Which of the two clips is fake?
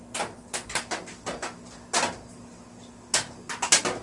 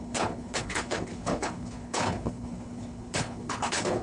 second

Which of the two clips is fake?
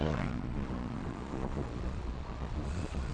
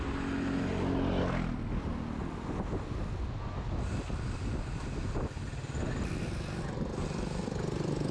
first